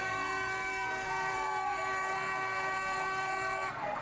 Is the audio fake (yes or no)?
yes